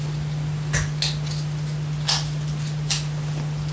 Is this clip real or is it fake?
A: real